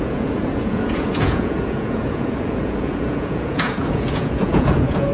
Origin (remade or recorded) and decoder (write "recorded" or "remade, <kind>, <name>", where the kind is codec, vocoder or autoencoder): remade, vocoder, Vocos